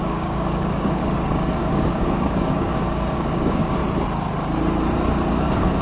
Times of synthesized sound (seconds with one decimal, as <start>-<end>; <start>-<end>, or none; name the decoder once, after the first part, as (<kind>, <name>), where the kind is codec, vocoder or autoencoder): 0.0-1.0 (codec, DAC); 1.6-3.8; 5.3-5.8

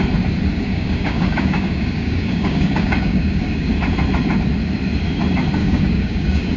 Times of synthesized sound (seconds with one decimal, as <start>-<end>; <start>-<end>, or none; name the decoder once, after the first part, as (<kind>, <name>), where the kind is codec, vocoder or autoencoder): 0.5-3.7 (codec, DAC); 5.6-6.6

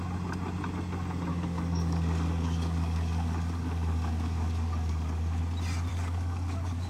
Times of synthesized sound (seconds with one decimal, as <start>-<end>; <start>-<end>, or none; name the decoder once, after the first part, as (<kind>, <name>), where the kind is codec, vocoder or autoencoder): 1.3-5.4 (codec, DAC); 5.9-6.9

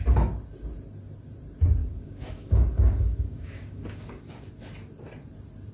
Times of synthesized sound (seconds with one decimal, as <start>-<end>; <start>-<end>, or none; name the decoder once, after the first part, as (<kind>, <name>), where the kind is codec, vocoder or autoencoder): 1.8-4.5 (codec, DAC)

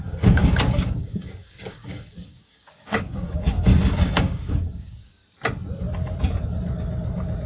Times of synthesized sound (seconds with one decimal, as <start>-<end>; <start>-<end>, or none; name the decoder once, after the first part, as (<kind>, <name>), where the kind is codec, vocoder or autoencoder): 0.0-5.2 (codec, DAC)

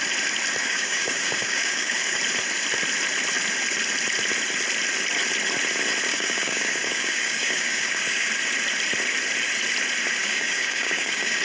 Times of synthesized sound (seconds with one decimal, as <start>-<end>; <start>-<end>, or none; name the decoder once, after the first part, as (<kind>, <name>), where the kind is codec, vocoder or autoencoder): 0.6-2.2 (codec, DAC); 6.1-8.3; 10.2-11.4